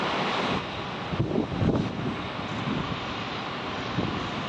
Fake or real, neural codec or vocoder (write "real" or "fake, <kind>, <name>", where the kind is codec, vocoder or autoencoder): real